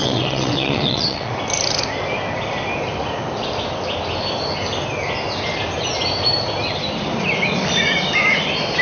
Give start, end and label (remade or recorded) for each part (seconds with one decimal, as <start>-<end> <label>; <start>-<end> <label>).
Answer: 0.0-1.3 remade; 1.3-8.8 recorded